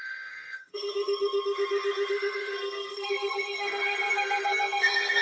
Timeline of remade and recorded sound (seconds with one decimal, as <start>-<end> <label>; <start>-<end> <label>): 0.0-5.2 remade